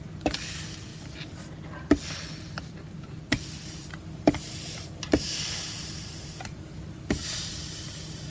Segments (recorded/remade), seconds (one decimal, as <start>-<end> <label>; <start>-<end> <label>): 0.0-8.3 recorded